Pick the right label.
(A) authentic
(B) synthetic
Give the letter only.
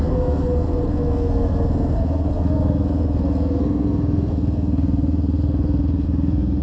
B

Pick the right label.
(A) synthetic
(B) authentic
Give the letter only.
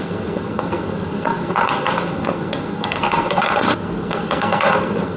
A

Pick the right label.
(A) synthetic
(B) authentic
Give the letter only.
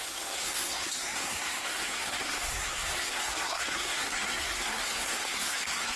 A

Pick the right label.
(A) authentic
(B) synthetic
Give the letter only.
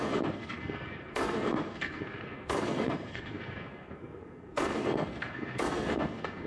B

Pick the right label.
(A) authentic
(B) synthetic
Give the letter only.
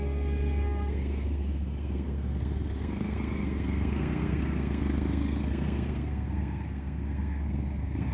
B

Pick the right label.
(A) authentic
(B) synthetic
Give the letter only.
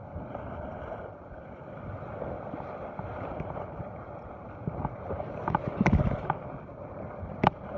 A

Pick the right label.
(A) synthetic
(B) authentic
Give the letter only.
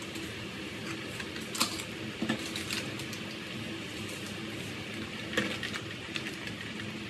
B